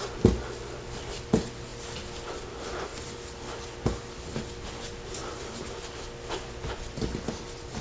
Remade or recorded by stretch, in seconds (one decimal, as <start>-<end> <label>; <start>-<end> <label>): 0.0-7.8 recorded